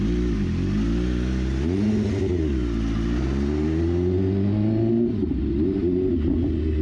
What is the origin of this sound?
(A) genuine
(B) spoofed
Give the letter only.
A